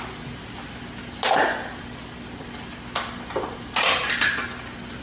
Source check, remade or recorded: recorded